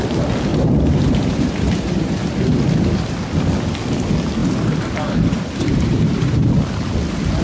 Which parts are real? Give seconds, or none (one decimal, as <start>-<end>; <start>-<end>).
0.0-0.5; 2.1-4.4; 6.5-7.4